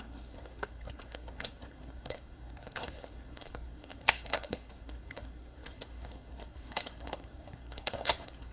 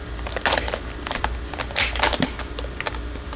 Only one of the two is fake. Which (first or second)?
first